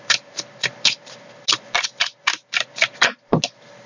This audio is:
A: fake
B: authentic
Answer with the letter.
B